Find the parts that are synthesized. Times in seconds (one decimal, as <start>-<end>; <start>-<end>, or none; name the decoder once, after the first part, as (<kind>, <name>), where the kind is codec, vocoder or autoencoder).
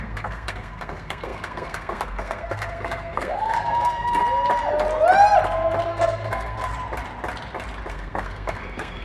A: 0.0-4.2 (codec, SNAC); 5.8-6.7; 7.9-9.0